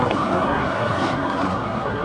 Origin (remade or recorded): remade